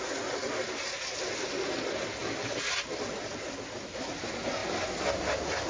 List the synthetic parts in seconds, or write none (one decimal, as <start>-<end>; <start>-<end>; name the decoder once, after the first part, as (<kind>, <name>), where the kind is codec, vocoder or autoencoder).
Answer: none